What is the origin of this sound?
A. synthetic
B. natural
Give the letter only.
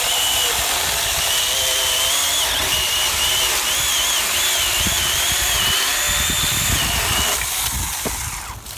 A